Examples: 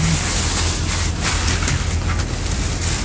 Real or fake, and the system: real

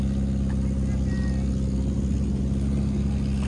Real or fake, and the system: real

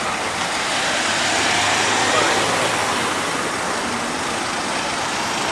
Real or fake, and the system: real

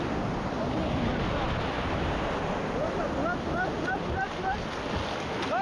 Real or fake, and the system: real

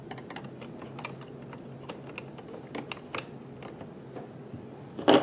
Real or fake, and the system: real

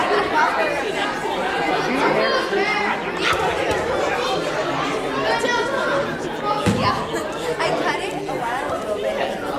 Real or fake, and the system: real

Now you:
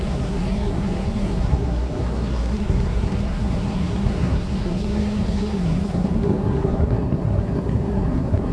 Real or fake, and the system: fake, codec, SNAC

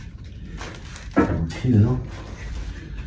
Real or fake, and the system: real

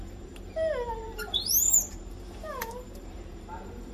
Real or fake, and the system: fake, vocoder, BigVGAN v2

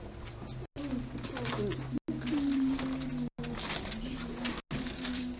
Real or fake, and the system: real